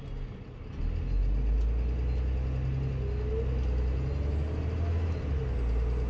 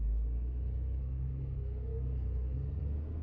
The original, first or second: first